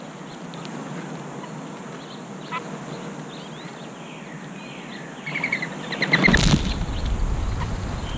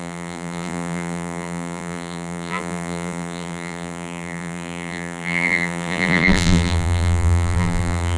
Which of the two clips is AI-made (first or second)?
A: second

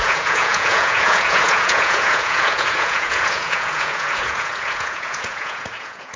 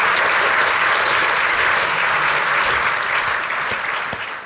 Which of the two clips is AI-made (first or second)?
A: first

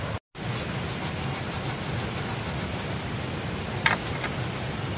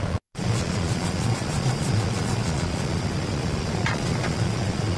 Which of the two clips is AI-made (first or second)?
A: second